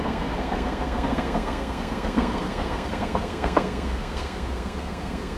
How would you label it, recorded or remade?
remade